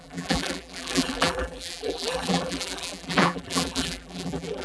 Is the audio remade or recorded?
remade